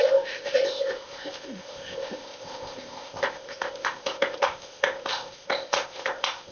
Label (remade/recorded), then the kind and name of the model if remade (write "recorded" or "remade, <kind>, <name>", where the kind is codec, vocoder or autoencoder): remade, codec, ZipCodec